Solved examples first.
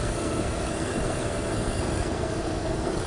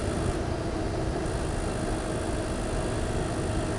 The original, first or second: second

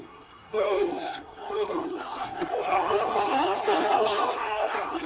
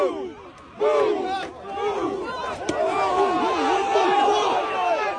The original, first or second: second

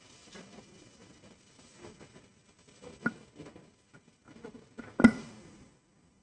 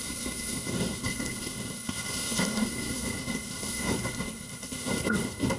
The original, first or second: first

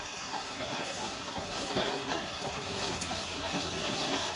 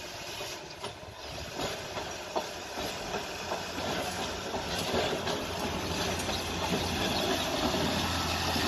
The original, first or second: second